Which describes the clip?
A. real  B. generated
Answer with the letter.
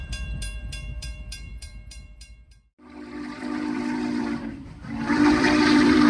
B